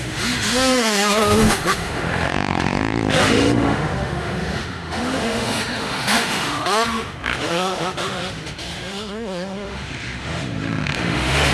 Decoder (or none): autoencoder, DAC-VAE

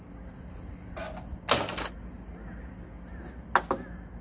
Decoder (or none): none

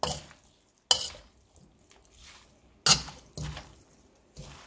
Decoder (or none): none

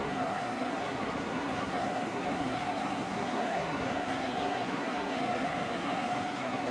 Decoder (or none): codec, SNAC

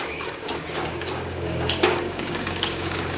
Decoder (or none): codec, DAC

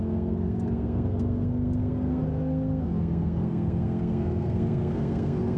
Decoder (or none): codec, SNAC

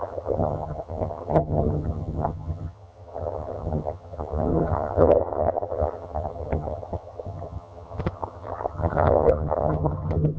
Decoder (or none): vocoder, HiFi-GAN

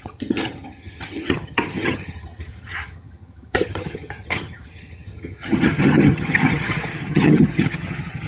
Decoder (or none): vocoder, HiFi-GAN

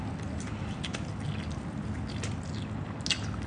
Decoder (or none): none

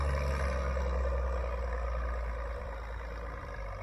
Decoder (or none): vocoder, BigVGAN v2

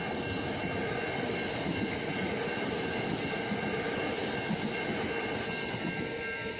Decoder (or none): none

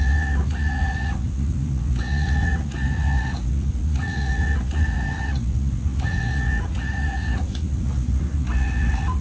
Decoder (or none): vocoder, Vocos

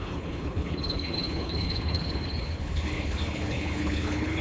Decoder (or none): codec, HILCodec